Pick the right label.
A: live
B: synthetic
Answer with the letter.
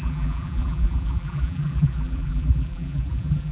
B